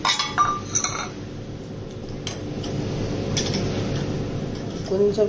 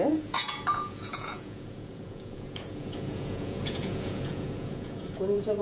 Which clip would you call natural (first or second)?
first